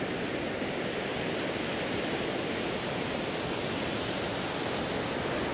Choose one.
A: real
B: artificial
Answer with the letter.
A